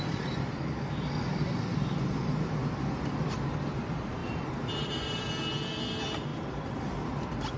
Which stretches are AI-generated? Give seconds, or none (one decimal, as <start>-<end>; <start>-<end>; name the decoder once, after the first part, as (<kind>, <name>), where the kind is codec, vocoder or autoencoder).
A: 4.2-5.3 (vocoder, BigVGAN v2); 6.3-6.8